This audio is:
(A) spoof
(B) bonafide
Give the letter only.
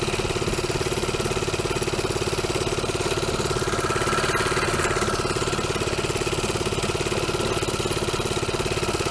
B